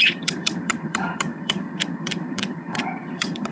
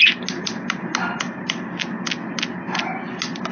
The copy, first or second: first